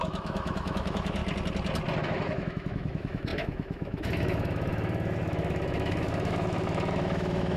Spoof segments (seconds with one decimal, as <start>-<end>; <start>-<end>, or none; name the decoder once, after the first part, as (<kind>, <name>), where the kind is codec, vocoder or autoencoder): 0.0-1.2 (autoencoder, DAC-VAE); 2.0-7.6